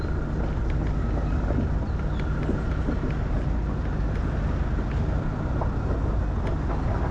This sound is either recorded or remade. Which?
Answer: recorded